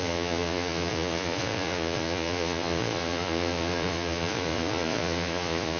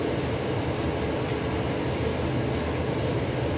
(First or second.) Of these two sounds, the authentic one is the second